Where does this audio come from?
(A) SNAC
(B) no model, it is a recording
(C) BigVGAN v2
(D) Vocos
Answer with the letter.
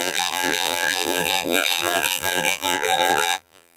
C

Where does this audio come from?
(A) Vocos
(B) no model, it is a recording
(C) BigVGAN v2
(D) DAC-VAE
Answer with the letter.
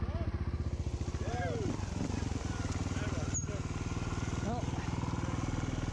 B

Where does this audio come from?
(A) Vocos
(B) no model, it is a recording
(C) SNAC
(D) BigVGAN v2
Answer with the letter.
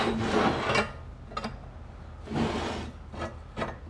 B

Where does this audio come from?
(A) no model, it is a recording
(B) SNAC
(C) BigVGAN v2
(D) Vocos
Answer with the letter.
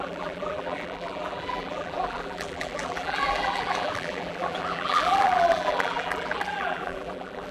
C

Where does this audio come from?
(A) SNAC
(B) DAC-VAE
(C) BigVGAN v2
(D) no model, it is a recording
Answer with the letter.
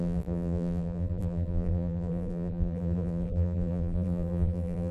C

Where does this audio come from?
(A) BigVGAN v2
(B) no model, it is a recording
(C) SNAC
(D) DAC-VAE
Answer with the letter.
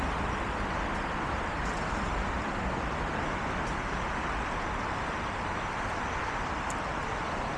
B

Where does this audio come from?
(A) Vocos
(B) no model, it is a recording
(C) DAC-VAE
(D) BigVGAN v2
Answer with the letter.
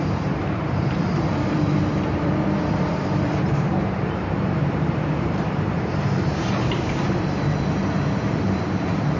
D